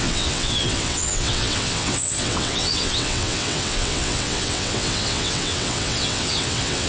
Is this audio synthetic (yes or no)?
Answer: yes